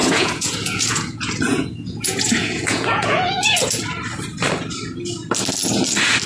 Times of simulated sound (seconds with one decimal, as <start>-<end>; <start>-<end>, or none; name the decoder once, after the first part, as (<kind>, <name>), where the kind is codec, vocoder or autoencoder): 0.0-3.8 (vocoder, Vocos)